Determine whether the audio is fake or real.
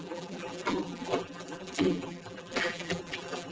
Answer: fake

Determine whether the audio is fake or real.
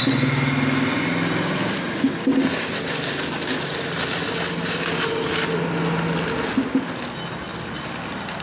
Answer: real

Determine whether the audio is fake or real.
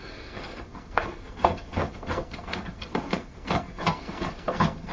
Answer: fake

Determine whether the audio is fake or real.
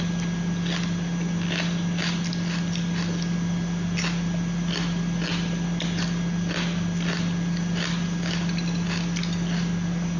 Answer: real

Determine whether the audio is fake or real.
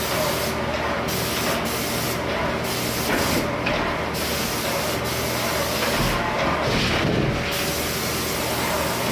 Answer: real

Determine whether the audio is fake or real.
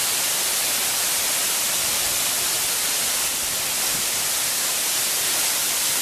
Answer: real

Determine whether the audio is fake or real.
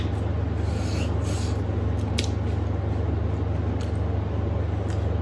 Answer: real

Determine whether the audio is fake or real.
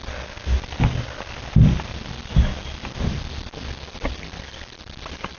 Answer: real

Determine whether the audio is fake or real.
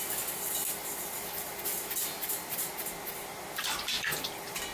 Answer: real